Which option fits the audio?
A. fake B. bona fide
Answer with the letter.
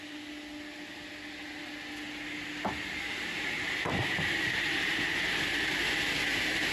B